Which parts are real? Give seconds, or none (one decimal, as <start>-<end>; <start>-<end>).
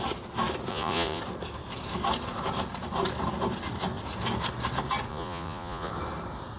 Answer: 0.0-0.7; 1.2-5.1; 5.9-6.6